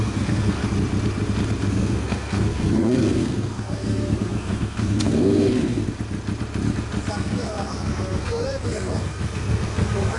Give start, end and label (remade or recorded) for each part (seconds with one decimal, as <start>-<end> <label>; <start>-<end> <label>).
0.0-0.6 remade; 0.6-1.7 recorded; 1.7-5.8 remade; 5.8-7.1 recorded; 7.1-10.2 remade